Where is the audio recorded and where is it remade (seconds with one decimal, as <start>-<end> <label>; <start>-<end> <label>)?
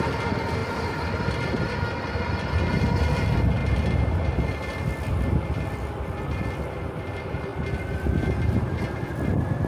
0.0-9.7 recorded